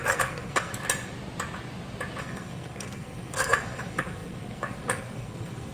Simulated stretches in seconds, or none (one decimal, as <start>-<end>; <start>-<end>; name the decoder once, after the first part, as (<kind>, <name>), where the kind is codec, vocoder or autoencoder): 0.0-0.7 (codec, SNAC); 2.2-5.7